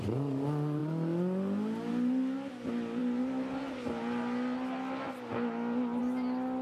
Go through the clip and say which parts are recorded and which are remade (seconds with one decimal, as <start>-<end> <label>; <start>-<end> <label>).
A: 0.0-6.6 recorded